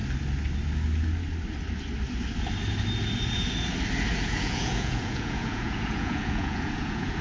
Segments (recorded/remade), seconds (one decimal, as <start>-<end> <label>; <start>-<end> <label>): 0.0-4.1 recorded; 4.1-7.2 remade